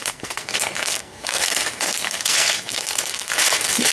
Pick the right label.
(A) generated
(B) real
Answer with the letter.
A